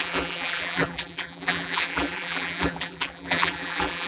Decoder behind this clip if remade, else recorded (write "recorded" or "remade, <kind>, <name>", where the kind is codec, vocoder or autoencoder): remade, vocoder, BigVGAN v2